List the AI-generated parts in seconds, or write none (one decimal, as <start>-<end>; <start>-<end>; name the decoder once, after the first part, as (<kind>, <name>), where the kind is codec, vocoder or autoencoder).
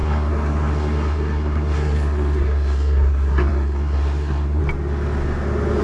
0.0-4.6 (codec, SNAC)